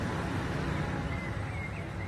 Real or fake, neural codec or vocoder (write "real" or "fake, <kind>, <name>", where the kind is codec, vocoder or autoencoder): real